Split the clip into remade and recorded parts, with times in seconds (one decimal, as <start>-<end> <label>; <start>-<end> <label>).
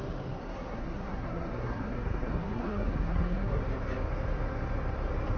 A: 0.0-0.4 recorded; 0.4-3.6 remade; 3.6-5.4 recorded